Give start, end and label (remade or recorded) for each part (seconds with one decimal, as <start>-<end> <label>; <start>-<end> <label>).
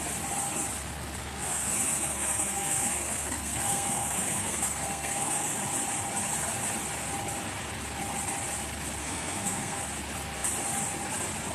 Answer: 0.0-1.2 recorded; 1.2-5.6 remade; 5.6-9.0 recorded; 9.0-9.8 remade; 9.8-11.5 recorded